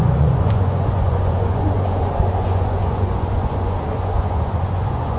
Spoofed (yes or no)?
yes